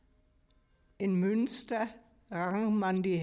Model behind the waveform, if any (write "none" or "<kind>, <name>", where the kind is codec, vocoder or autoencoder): none